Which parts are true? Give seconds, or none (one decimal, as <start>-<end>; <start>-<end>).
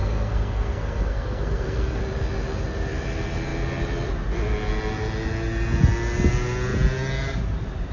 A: 2.0-7.9